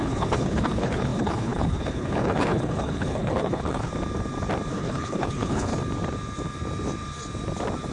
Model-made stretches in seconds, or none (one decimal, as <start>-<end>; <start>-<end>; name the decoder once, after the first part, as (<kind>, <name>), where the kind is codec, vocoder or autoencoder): 0.0-3.9 (codec, HILCodec); 4.7-5.7